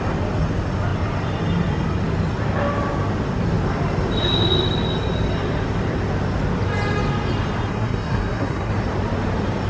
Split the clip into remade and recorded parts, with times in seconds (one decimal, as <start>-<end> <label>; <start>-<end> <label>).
0.0-7.7 recorded; 7.7-8.7 remade; 8.7-9.7 recorded